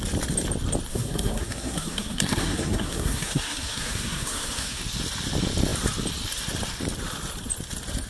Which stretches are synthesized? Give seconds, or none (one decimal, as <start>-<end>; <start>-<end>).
0.9-4.8